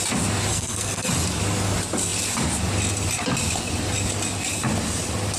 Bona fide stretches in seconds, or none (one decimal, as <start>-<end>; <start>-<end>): 0.0-0.5; 1.1-5.4